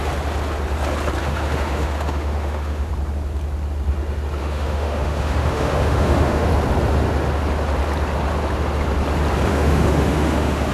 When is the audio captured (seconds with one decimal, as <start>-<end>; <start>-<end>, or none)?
0.0-1.2; 2.9-4.4; 6.5-9.5